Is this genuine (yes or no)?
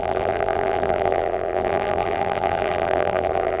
no